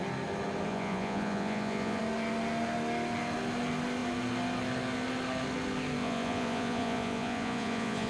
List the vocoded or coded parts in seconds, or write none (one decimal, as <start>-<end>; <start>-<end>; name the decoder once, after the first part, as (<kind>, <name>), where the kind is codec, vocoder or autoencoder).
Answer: 0.7-2.0 (vocoder, Vocos); 6.0-8.1

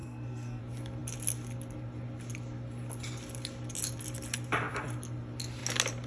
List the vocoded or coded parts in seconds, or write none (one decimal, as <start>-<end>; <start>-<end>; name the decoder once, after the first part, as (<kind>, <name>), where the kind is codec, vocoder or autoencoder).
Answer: 0.0-0.6 (codec, SNAC)

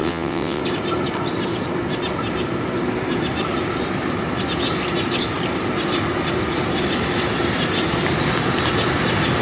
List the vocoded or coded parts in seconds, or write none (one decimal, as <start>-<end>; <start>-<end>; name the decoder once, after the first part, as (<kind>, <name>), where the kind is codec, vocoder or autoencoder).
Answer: 0.0-0.6 (vocoder, WaveNeXt)

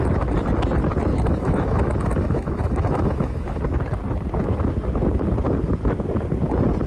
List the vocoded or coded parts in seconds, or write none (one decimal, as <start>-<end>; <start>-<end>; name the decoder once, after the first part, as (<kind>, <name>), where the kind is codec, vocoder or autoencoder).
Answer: 1.1-3.6 (autoencoder, DAC-VAE)

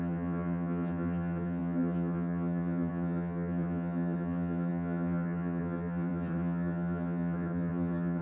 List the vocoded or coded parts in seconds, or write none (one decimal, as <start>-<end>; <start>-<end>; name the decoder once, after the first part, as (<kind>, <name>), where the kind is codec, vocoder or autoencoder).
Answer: 0.0-8.2 (vocoder, HiFi-GAN)

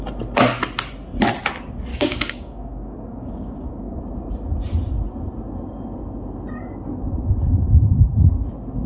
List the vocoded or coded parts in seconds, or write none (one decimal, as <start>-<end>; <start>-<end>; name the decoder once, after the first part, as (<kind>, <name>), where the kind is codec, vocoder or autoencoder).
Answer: 1.9-4.0 (codec, DAC)

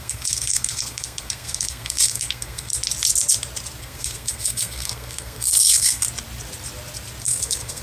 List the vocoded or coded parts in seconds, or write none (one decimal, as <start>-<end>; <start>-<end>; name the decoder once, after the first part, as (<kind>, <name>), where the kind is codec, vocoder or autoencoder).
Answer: 0.0-2.7 (codec, SNAC); 3.8-6.0; 7.2-7.8

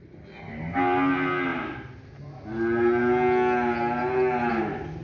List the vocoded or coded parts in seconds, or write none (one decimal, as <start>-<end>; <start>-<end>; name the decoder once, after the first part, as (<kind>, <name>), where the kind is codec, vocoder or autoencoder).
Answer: none